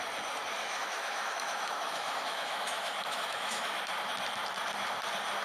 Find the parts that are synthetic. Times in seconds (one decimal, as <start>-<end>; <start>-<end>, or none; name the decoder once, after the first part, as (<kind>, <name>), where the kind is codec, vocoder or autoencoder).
0.6-3.8 (autoencoder, DAC-VAE)